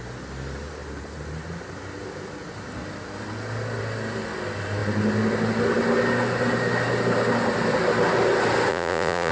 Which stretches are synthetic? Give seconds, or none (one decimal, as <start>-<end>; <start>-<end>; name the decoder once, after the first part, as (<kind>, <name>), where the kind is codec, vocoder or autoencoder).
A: 8.7-9.3 (vocoder, Vocos)